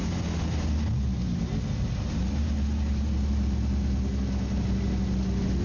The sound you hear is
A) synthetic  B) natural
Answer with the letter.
B